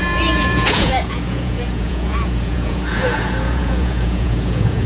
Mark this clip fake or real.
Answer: fake